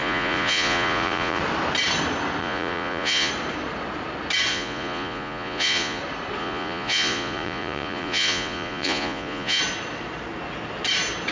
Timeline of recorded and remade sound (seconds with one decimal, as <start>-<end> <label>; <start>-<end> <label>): 0.0-1.4 remade; 1.4-2.4 recorded; 2.4-3.3 remade; 3.3-4.5 recorded; 4.5-6.0 remade; 6.0-6.4 recorded; 6.4-9.6 remade; 9.6-11.3 recorded